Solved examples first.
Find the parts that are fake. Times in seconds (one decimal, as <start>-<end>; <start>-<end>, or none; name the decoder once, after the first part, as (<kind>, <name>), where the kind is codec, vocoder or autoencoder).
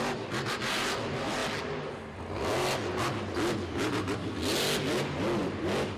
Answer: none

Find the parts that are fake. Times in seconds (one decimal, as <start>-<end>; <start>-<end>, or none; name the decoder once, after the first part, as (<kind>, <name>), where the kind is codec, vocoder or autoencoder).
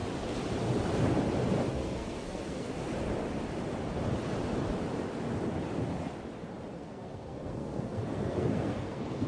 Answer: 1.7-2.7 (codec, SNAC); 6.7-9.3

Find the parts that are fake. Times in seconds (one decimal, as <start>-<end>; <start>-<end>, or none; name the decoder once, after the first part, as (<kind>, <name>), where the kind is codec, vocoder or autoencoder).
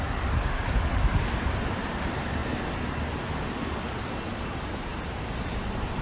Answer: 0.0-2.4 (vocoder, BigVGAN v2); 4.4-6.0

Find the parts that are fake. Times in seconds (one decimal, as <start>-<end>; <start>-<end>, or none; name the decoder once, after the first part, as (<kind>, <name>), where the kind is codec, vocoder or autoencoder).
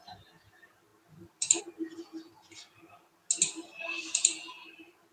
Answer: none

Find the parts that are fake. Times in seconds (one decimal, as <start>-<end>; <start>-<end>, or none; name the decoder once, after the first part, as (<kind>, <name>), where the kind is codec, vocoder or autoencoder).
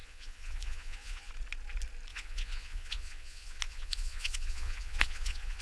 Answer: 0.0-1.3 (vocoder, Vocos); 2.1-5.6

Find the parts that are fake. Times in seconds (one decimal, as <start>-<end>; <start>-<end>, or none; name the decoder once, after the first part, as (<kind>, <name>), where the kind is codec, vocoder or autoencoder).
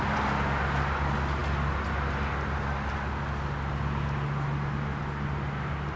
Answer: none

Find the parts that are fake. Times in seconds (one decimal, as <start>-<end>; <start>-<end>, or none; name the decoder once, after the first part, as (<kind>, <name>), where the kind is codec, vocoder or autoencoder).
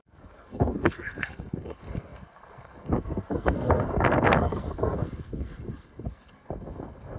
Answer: 0.0-7.2 (codec, SNAC)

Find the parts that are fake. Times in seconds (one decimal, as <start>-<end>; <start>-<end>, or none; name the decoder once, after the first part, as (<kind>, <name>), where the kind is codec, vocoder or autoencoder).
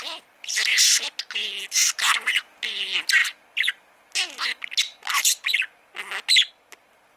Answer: 0.0-0.7 (vocoder, BigVGAN v2); 1.7-3.2; 6.5-7.2